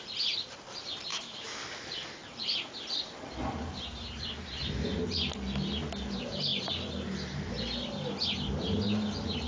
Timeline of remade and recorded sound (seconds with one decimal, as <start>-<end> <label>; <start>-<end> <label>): 0.0-1.1 recorded; 1.1-1.6 remade; 1.6-9.5 recorded